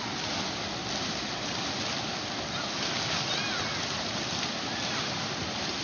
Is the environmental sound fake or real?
real